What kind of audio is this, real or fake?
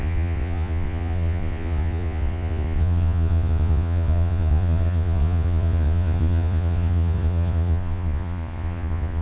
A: fake